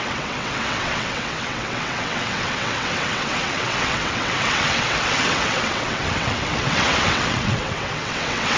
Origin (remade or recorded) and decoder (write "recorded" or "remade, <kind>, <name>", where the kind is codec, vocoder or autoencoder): remade, vocoder, WaveNeXt